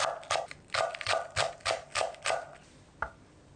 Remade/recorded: recorded